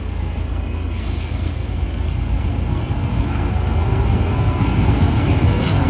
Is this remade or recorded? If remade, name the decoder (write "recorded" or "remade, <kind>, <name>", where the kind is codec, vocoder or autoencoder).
remade, codec, SNAC